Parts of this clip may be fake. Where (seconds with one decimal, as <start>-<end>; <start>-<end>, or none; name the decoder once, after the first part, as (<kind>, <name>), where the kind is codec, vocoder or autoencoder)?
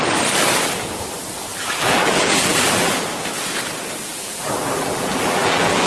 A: 1.5-3.0 (vocoder, BigVGAN v2); 4.1-5.9